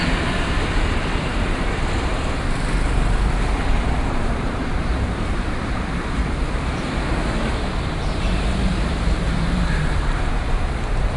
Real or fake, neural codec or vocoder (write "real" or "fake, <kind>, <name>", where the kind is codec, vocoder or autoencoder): fake, vocoder, BigVGAN v2